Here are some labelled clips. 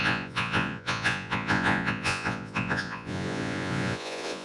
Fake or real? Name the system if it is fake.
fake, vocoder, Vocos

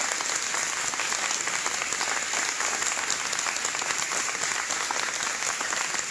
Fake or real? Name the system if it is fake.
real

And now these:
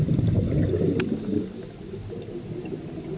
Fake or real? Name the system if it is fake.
real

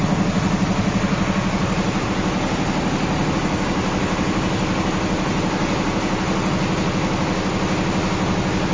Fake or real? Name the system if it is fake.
real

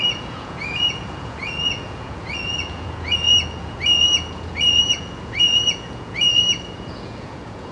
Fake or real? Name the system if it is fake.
fake, vocoder, Vocos